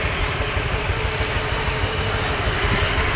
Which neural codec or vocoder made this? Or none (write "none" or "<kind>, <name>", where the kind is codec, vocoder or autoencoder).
none